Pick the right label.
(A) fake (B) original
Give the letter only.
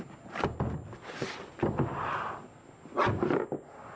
B